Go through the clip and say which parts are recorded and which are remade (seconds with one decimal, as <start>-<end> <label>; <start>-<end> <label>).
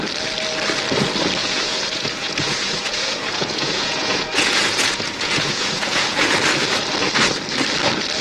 0.0-1.4 recorded; 1.4-6.3 remade; 6.3-8.2 recorded